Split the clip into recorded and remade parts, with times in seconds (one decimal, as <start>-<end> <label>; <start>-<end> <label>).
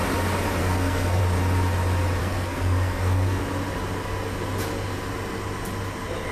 0.0-0.6 recorded; 0.6-1.2 remade; 1.2-2.2 recorded; 2.2-3.4 remade; 3.4-6.3 recorded